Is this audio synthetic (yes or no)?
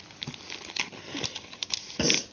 no